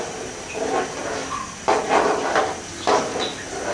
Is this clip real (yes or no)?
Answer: yes